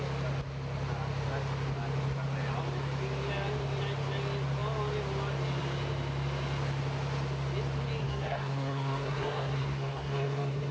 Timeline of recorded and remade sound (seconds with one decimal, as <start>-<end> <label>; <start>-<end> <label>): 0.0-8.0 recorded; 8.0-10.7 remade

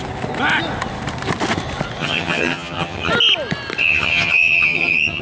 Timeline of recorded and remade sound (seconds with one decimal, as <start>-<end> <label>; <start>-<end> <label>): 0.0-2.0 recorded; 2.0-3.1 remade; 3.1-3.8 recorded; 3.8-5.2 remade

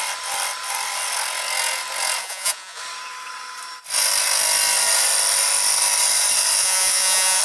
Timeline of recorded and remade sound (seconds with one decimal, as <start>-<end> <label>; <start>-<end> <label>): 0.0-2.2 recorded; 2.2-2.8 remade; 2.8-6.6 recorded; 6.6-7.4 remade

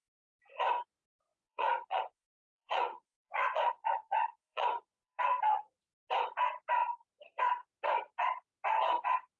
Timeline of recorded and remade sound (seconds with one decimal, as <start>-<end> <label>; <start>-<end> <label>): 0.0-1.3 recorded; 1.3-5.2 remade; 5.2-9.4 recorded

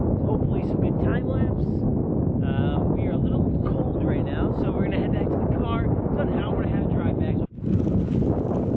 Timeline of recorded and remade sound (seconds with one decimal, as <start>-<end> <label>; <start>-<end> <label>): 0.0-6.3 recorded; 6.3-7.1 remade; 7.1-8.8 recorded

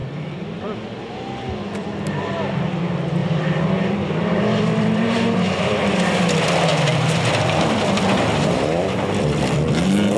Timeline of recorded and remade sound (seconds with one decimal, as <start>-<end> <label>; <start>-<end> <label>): 0.0-1.0 remade; 1.0-3.2 recorded; 3.2-6.2 remade; 6.2-6.7 recorded; 6.7-9.7 remade; 9.7-10.2 recorded